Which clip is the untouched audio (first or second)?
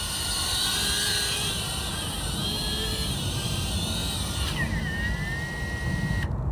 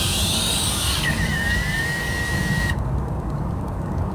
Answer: first